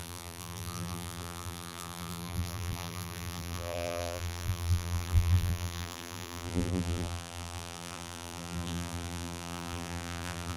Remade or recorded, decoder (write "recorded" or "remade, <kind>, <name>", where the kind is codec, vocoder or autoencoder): remade, vocoder, BigVGAN v2